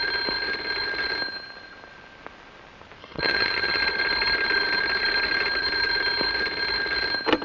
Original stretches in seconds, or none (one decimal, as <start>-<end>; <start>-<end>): 0.0-3.0; 3.8-7.4